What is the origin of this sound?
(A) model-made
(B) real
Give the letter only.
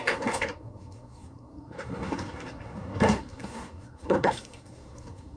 A